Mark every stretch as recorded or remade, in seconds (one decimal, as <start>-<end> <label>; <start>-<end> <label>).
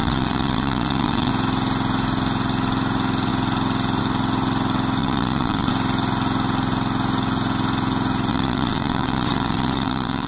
0.0-1.3 remade; 1.3-5.0 recorded; 5.0-5.7 remade; 5.7-8.3 recorded; 8.3-10.3 remade